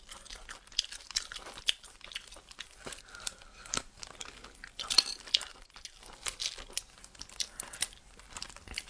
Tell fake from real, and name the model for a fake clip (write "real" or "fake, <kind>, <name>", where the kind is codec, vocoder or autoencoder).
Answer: real